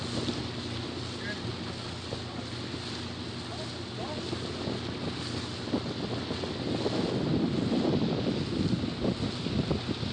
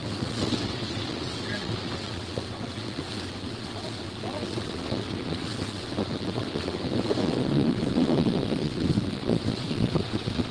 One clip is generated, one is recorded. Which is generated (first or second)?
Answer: second